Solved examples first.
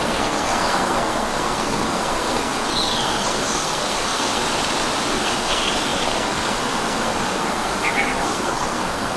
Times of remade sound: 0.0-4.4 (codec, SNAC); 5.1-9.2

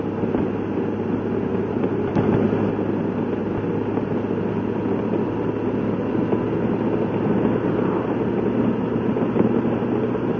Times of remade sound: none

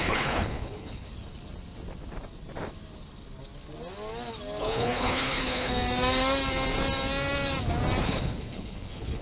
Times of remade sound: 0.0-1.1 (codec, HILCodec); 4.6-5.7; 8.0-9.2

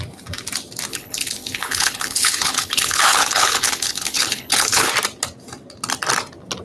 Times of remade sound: 0.9-4.9 (codec, HILCodec)

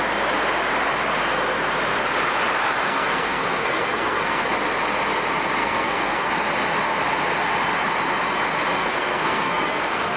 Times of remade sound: 2.8-4.5 (codec, SNAC); 5.6-6.3; 8.8-10.2